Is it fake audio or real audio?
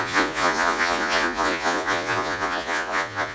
fake